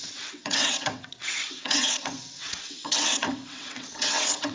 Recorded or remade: remade